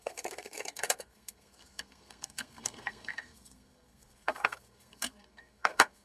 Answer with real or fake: fake